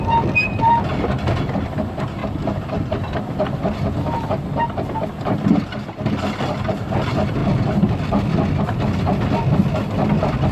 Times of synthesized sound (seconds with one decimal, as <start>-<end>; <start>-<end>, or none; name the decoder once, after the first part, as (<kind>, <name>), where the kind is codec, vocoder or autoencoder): 2.2-3.9 (vocoder, BigVGAN v2)